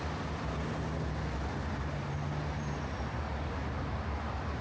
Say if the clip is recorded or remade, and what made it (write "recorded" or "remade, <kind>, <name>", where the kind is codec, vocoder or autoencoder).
recorded